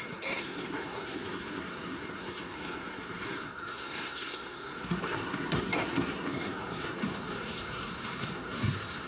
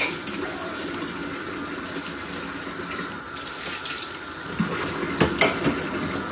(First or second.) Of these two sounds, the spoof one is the first